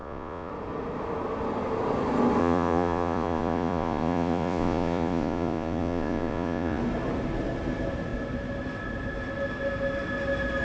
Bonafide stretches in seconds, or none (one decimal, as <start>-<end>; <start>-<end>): 0.5-2.4; 6.8-10.6